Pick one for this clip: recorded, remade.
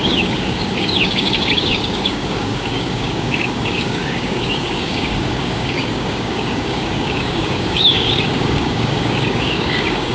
remade